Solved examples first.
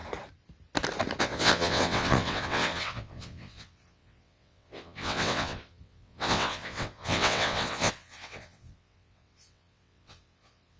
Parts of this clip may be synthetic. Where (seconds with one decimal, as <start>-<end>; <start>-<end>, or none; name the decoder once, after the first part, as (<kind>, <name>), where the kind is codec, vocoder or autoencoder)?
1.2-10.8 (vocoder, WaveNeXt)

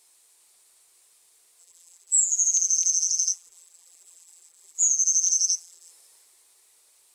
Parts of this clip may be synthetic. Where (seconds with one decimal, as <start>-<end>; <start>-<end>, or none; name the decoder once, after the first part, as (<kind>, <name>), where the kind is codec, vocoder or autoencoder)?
1.6-5.9 (vocoder, BigVGAN v2)

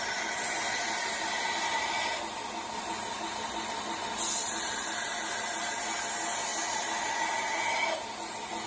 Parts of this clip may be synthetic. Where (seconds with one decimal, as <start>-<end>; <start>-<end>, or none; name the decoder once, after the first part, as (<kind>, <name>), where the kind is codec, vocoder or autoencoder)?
none

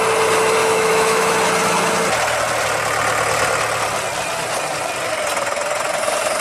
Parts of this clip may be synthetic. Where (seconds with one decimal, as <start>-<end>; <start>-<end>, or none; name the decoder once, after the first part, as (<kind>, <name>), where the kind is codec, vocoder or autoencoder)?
0.6-1.3 (autoencoder, DAC-VAE)